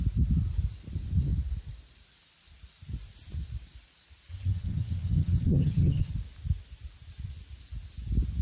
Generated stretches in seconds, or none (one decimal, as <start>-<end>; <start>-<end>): 4.3-6.1